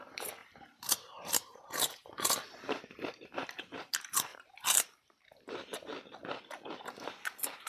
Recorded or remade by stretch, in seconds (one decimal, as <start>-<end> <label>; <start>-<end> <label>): 0.0-5.9 remade; 5.9-6.8 recorded; 6.8-7.7 remade